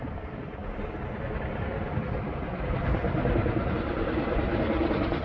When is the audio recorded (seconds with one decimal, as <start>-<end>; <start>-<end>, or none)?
0.0-5.2